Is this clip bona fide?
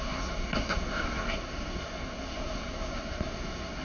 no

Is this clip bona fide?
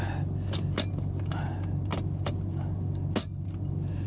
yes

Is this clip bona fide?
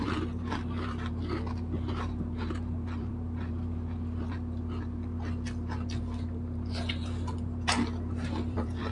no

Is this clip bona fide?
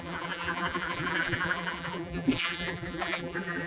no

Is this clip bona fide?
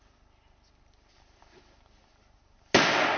yes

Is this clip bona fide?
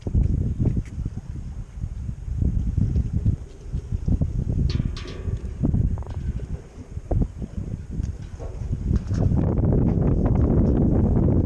yes